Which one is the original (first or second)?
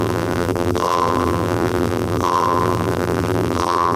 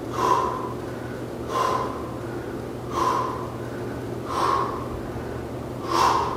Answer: second